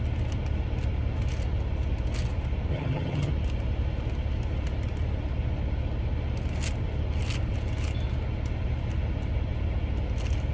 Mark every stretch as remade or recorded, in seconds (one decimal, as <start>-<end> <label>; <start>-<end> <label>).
0.0-2.7 recorded; 2.7-3.3 remade; 3.3-10.5 recorded